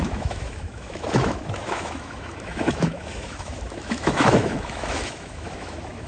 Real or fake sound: fake